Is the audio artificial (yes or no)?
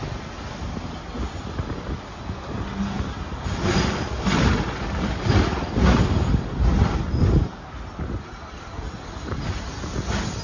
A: no